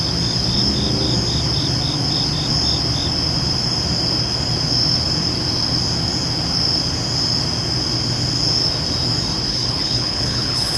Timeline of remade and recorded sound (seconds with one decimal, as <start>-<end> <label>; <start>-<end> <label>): 0.0-9.5 recorded; 9.5-10.8 remade